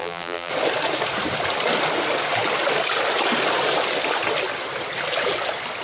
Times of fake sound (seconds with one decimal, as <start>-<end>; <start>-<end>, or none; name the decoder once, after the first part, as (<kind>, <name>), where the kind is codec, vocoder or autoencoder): 0.0-0.5 (vocoder, BigVGAN v2)